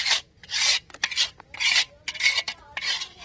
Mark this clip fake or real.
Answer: real